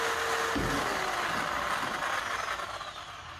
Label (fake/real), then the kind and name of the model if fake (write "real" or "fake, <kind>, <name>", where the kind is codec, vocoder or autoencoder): real